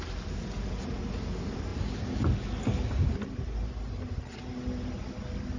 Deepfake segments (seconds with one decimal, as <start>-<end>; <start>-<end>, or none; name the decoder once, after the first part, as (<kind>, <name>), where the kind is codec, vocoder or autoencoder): none